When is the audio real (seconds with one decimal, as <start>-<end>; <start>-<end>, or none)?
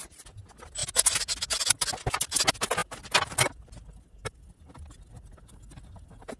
0.0-6.4